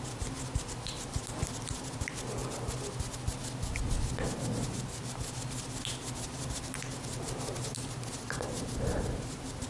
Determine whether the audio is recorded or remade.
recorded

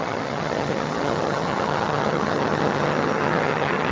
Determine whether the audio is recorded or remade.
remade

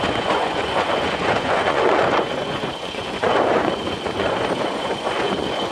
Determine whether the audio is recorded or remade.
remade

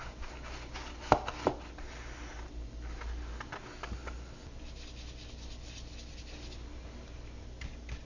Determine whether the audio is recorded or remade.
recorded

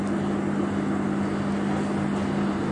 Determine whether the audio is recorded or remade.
recorded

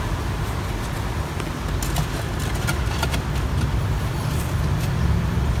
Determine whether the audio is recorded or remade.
recorded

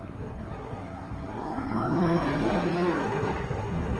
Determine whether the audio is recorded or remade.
remade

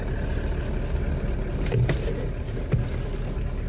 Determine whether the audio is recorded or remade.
recorded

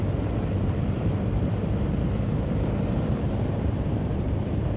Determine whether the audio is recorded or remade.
remade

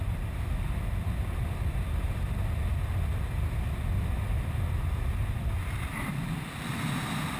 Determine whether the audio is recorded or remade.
recorded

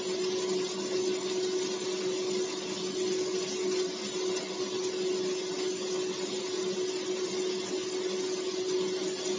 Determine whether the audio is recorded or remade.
recorded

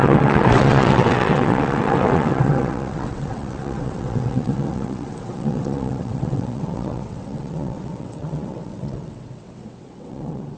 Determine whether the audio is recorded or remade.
remade